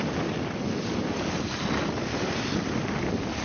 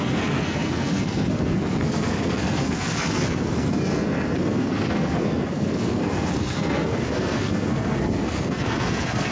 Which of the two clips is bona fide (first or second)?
first